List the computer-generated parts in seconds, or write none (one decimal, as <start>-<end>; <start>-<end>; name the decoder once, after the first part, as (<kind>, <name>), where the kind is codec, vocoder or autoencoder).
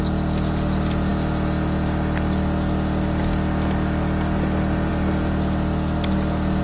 none